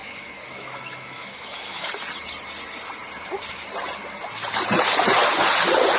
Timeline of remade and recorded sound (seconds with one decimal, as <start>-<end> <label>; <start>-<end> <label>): 0.0-1.9 remade; 1.9-6.0 recorded